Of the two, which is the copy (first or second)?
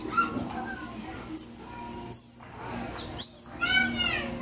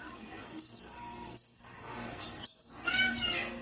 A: second